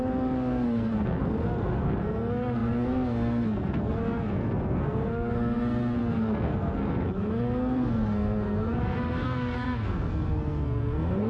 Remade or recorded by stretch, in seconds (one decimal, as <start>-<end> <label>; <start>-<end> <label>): 0.0-11.3 remade